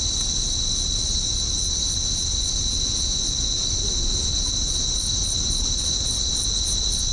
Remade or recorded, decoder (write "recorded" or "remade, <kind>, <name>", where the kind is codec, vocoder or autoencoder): recorded